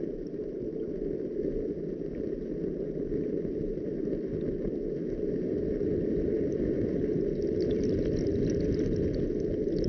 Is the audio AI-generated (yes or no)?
no